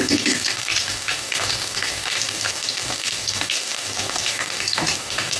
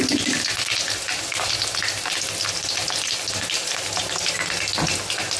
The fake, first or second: first